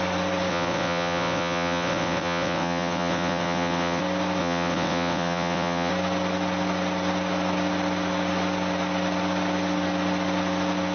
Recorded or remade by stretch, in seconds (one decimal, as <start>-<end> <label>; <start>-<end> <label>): 0.0-0.5 recorded; 0.5-4.0 remade; 4.0-4.4 recorded; 4.4-5.9 remade; 5.9-10.9 recorded